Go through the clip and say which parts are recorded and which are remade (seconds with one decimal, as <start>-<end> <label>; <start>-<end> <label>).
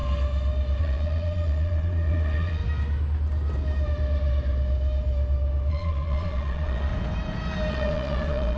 0.0-0.8 recorded; 0.8-2.6 remade; 2.6-5.7 recorded; 5.7-6.9 remade; 6.9-7.7 recorded; 7.7-8.6 remade